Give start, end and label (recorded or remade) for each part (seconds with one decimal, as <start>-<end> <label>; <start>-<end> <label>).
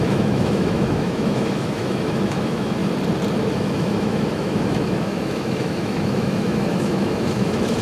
0.0-2.8 remade; 2.8-3.5 recorded; 3.5-7.8 remade